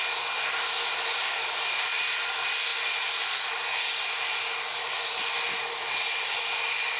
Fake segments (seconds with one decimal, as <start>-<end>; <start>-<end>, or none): 1.1-2.0; 2.7-7.0